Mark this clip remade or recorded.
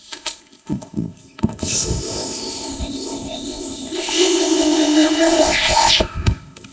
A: remade